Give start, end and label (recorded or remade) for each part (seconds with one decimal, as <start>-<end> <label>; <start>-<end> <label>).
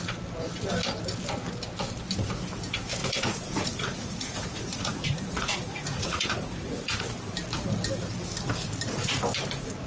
0.0-3.0 recorded; 3.0-7.0 remade; 7.0-9.9 recorded